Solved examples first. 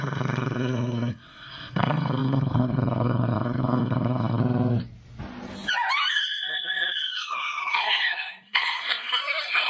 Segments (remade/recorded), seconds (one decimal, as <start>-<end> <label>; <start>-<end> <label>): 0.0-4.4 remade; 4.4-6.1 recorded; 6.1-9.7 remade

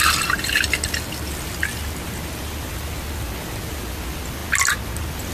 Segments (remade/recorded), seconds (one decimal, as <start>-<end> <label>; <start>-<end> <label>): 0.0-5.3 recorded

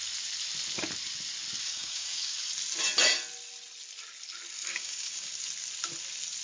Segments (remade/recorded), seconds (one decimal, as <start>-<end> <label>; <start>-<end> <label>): 0.0-1.6 recorded; 1.6-2.4 remade; 2.4-4.7 recorded; 4.7-5.3 remade; 5.3-6.4 recorded

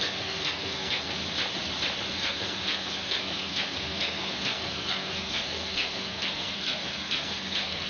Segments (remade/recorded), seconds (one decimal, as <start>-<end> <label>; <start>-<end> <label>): 0.0-1.2 remade; 1.2-2.1 recorded; 2.1-7.9 remade

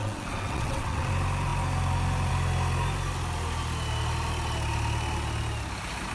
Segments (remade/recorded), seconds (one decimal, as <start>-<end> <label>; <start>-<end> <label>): 0.0-1.1 remade; 1.1-6.1 recorded

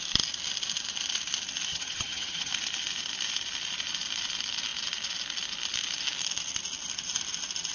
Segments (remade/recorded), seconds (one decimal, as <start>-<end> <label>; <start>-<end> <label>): 0.0-1.7 recorded; 1.7-2.5 remade; 2.5-7.7 recorded

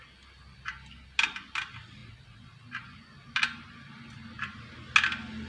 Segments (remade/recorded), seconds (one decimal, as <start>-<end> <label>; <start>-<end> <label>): 0.0-5.5 recorded

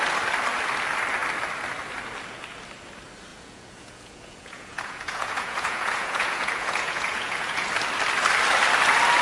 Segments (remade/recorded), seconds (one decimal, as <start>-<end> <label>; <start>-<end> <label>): 0.0-3.3 recorded; 3.3-7.7 remade; 7.7-9.2 recorded